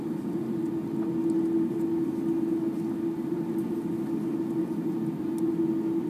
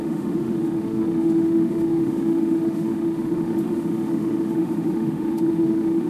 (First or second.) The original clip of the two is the first